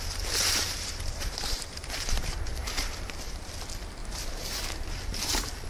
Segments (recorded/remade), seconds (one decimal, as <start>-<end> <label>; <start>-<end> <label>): 0.0-0.6 recorded; 0.6-3.5 remade; 3.5-4.0 recorded; 4.0-4.6 remade; 4.6-5.7 recorded